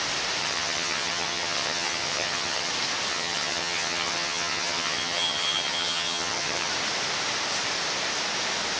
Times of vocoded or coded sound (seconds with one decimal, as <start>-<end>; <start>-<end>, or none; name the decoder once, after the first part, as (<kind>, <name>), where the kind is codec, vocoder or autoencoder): 0.4-2.7 (vocoder, HiFi-GAN); 3.1-6.7